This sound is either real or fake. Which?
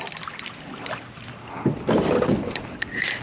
real